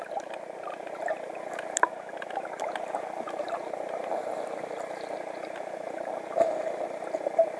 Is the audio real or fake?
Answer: real